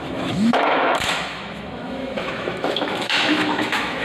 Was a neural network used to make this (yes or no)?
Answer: yes